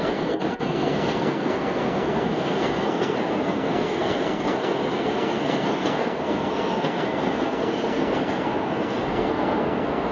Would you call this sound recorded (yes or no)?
no